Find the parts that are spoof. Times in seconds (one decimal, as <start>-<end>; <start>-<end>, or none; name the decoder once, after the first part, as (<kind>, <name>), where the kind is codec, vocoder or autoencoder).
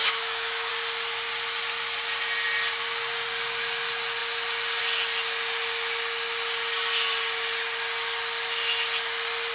0.0-0.7 (autoencoder, DAC-VAE)